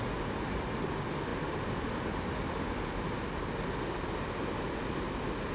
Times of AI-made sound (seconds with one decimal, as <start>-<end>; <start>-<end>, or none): none